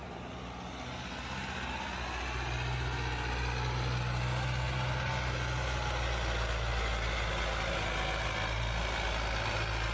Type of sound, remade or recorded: recorded